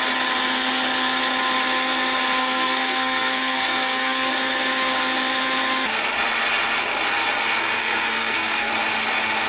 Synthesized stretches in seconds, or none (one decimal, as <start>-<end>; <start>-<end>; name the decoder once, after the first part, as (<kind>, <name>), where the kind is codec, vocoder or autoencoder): 2.4-4.3 (codec, SNAC); 7.6-8.7